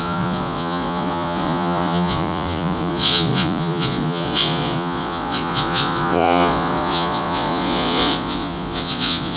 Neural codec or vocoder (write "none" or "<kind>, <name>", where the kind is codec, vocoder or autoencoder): vocoder, Vocos